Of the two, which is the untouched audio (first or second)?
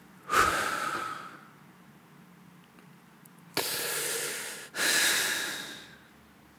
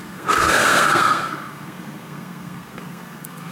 first